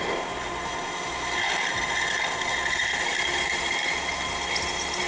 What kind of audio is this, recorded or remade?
recorded